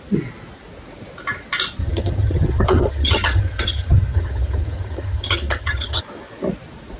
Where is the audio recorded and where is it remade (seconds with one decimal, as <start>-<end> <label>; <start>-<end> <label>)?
0.0-1.8 recorded; 1.8-6.0 remade; 6.0-7.0 recorded